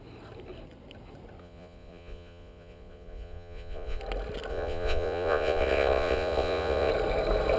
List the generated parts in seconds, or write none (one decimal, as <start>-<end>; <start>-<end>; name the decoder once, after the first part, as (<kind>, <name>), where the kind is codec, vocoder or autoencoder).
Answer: 1.4-4.0 (vocoder, Vocos); 4.5-6.9